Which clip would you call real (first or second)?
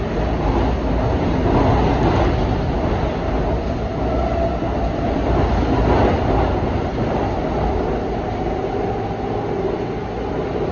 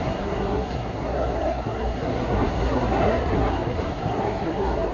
first